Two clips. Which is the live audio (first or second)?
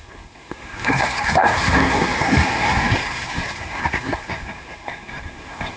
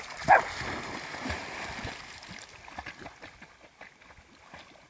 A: second